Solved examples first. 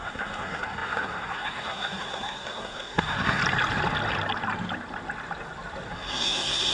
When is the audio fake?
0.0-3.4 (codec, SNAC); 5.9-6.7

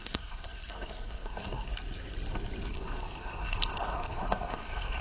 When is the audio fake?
0.0-1.7 (codec, SNAC); 2.7-5.0